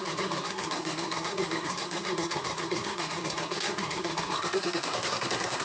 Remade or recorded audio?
remade